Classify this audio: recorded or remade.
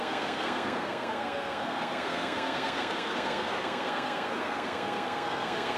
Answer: remade